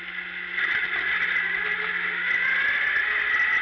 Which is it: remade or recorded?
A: recorded